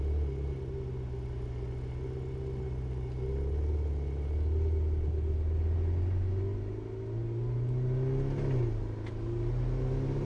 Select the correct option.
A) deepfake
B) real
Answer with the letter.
B